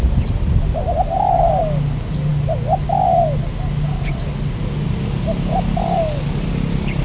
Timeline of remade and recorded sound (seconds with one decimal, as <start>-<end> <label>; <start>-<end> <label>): 0.0-7.0 recorded